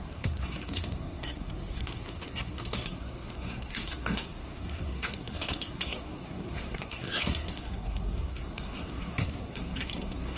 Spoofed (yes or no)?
yes